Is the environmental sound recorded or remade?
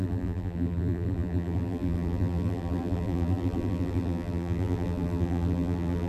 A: remade